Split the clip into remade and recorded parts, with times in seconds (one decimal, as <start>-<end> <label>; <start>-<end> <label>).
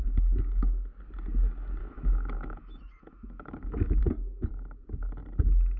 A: 0.0-1.8 recorded; 1.8-4.0 remade; 4.0-5.8 recorded